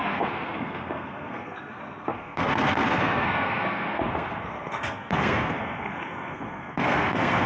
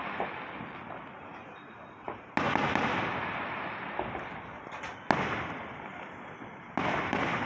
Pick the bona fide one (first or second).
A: second